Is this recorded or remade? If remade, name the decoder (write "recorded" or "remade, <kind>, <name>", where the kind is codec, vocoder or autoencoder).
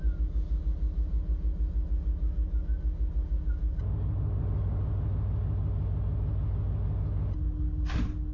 recorded